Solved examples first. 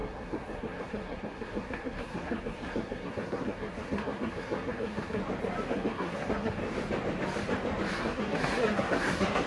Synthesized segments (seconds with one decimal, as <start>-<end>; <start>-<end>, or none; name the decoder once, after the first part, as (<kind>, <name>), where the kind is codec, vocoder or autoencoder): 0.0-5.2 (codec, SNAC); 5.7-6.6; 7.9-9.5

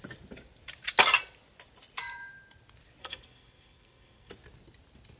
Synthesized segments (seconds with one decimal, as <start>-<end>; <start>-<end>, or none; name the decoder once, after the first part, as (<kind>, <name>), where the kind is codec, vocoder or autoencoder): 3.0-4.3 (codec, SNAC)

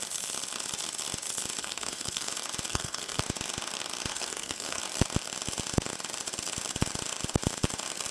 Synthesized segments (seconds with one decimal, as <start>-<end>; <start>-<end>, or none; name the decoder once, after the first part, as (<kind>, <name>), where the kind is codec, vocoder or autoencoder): 1.6-2.3 (codec, SNAC); 2.7-3.2; 4.1-4.8